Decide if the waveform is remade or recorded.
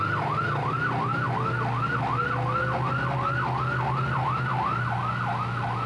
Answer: recorded